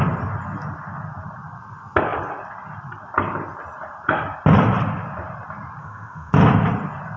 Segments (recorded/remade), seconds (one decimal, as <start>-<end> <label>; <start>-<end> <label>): 0.0-5.8 recorded; 5.8-6.3 remade; 6.3-7.2 recorded